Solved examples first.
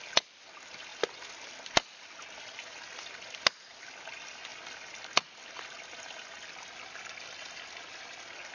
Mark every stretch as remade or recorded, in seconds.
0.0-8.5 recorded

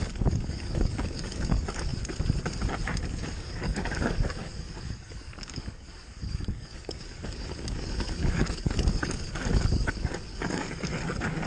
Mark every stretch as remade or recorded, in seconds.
0.0-1.9 remade; 1.9-3.1 recorded; 3.1-11.5 remade

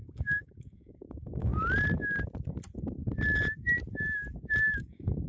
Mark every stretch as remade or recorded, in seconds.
0.0-1.5 remade; 1.5-4.7 recorded; 4.7-5.3 remade